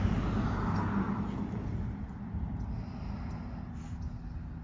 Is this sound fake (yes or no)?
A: no